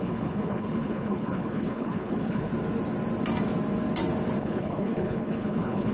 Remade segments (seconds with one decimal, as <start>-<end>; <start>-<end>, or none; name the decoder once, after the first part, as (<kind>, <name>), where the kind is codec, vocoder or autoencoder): 0.0-2.5 (codec, HILCodec); 4.4-5.9